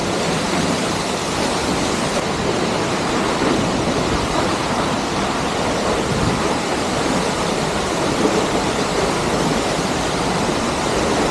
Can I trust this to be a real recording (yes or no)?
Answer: no